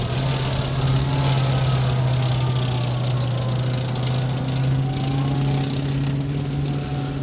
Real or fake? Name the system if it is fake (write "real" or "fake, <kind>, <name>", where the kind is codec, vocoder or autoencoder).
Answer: real